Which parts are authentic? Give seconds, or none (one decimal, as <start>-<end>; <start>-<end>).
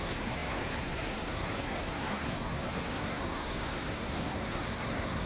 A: none